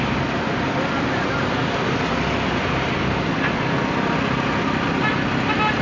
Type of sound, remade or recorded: recorded